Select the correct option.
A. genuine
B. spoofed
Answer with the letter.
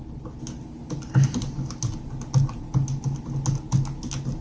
A